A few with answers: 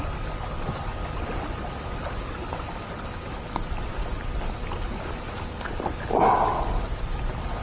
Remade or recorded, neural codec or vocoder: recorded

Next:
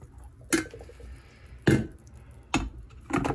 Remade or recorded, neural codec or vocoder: recorded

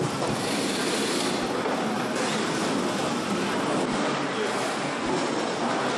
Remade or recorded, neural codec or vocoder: recorded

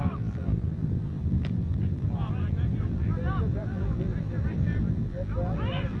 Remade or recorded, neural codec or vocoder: remade, vocoder, BigVGAN v2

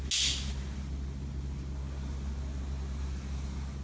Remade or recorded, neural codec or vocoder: recorded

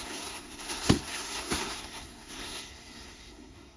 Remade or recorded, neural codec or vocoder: remade, codec, SNAC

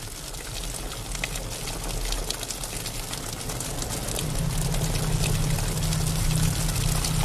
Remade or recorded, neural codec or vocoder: recorded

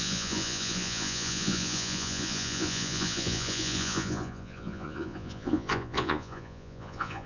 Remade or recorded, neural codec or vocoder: remade, vocoder, Vocos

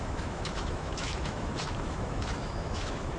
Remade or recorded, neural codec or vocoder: remade, autoencoder, DAC-VAE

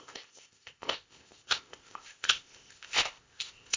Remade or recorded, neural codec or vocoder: remade, codec, ZipCodec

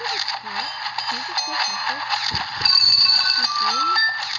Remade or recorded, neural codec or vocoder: recorded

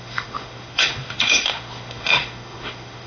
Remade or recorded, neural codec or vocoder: remade, autoencoder, DAC-VAE